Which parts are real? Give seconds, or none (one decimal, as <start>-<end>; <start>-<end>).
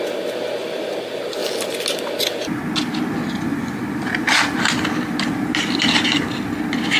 0.0-1.4; 2.6-3.5; 6.3-7.0